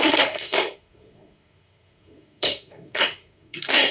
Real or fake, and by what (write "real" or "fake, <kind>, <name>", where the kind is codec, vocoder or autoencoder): fake, codec, SNAC